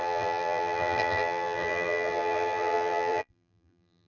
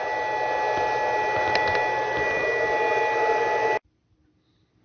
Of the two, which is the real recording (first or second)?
second